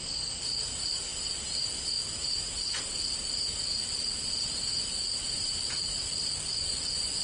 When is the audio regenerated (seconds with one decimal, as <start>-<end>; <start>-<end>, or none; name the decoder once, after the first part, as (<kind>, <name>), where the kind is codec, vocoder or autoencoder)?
6.5-7.2 (vocoder, Vocos)

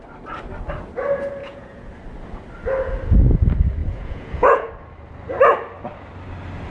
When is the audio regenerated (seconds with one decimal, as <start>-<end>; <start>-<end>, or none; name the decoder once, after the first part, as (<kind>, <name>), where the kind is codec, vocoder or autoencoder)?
1.4-1.9 (vocoder, Vocos); 3.8-4.7